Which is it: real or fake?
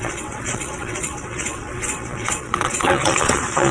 fake